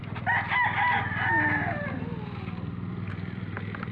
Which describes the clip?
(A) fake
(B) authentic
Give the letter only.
B